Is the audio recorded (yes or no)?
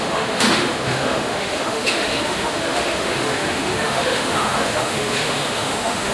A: no